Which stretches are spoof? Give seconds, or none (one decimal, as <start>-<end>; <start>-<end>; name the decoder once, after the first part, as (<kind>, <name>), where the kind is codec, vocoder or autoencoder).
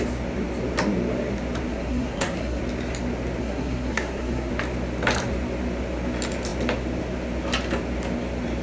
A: 1.7-2.6 (codec, SNAC); 3.4-4.5